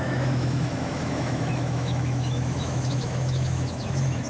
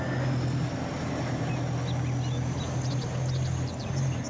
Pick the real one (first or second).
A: second